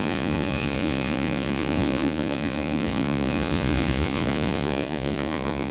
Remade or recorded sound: remade